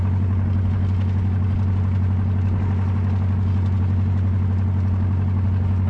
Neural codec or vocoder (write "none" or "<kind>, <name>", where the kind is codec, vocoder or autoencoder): none